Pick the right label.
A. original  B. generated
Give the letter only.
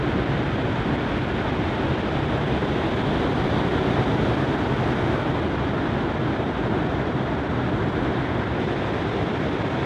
A